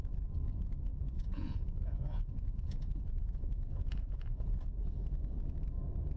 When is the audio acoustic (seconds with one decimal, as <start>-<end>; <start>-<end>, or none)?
0.0-0.9; 4.6-6.2